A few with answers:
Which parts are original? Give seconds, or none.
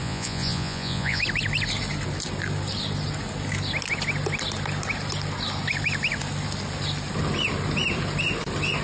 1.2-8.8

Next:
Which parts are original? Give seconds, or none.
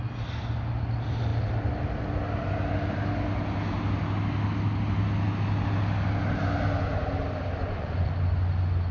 0.0-7.6; 8.1-8.9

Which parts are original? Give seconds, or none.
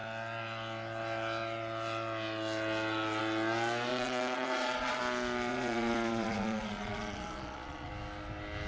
0.0-3.9; 5.0-5.5; 7.9-8.7